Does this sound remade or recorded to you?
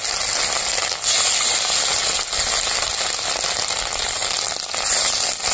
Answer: recorded